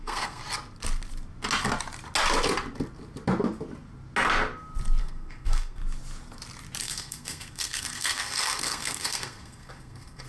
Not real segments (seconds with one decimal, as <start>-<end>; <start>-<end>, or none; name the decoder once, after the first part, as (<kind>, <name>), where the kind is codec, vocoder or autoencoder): 0.0-0.4 (codec, SNAC); 5.0-5.8; 6.8-10.3

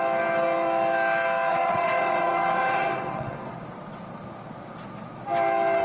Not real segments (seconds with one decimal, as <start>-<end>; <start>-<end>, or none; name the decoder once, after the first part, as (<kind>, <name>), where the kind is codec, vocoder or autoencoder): 1.5-3.5 (vocoder, WaveNeXt)